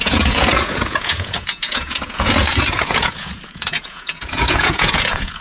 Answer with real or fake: fake